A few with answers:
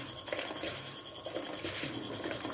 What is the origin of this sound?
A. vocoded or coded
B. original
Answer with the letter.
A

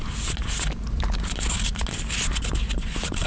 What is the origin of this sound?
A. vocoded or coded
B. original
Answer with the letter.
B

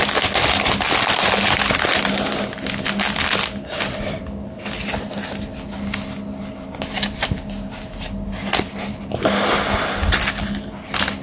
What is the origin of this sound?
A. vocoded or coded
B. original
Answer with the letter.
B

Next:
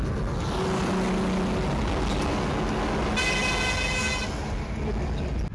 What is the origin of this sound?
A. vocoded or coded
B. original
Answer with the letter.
B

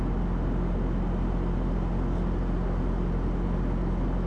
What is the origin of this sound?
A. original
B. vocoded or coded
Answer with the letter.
A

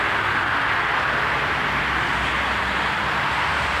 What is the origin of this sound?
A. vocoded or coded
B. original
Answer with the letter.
B